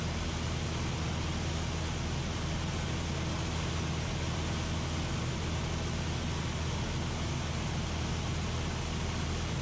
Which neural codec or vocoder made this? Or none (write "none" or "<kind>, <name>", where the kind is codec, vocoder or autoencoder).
none